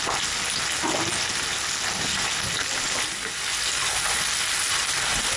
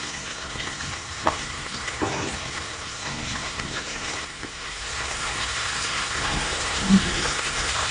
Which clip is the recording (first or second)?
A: first